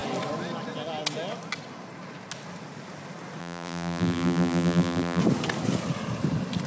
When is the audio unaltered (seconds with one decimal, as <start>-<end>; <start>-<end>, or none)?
0.0-3.4; 5.2-6.7